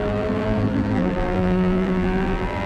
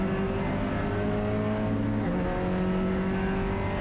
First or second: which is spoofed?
first